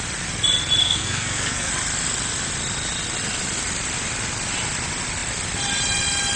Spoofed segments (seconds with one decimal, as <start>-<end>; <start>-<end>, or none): 0.8-1.7